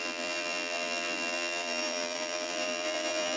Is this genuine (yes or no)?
no